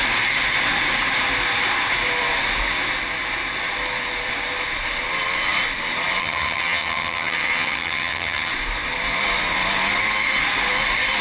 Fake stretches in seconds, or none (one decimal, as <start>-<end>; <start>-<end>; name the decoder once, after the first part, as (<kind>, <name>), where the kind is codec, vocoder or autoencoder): 6.2-8.5 (vocoder, HiFi-GAN)